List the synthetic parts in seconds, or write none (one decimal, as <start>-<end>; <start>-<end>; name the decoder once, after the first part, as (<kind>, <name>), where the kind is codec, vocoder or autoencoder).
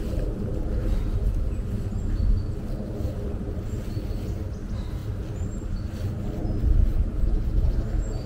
none